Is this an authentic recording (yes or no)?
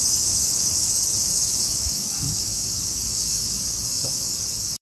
no